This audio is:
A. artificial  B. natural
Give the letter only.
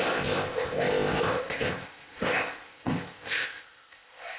A